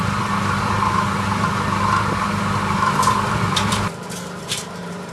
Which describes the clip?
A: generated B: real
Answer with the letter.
A